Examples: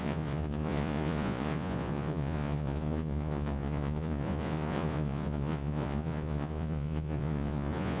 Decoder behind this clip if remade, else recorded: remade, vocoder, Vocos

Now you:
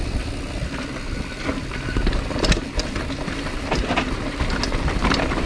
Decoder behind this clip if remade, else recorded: recorded